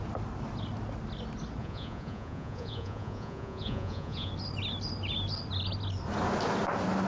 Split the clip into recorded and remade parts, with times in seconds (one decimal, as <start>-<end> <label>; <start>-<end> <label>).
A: 0.0-1.6 recorded; 1.6-4.3 remade; 4.3-7.1 recorded